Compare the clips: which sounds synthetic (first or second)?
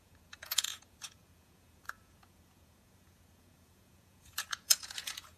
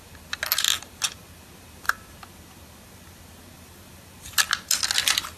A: first